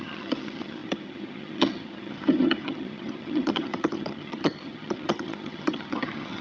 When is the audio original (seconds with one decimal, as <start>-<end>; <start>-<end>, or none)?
none